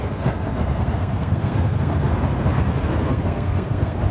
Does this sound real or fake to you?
fake